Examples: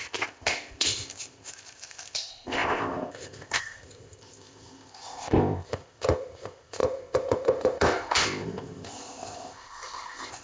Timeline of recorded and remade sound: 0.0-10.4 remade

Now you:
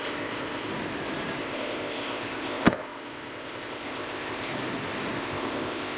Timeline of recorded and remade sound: 0.0-0.7 remade; 0.7-1.4 recorded; 1.4-4.5 remade; 4.5-5.2 recorded; 5.2-6.0 remade

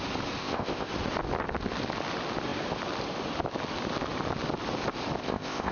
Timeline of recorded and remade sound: 0.0-0.4 recorded; 0.4-0.9 remade; 0.9-5.2 recorded; 5.2-5.7 remade

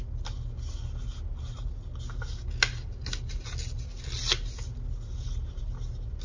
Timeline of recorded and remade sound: 0.0-6.2 recorded

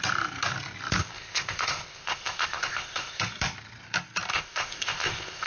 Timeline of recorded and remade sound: 0.0-1.0 recorded; 1.0-3.2 remade; 3.2-4.3 recorded; 4.3-5.5 remade

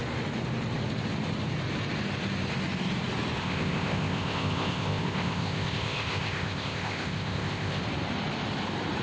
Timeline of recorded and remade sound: 0.0-3.4 recorded; 3.4-7.8 remade; 7.8-9.0 recorded

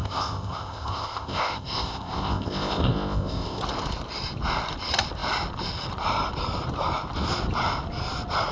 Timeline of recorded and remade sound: 0.0-3.6 remade; 3.6-8.5 recorded

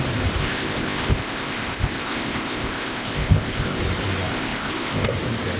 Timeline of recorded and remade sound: 0.0-0.4 recorded; 0.4-3.8 remade; 3.8-4.3 recorded; 4.3-5.1 remade; 5.1-5.6 recorded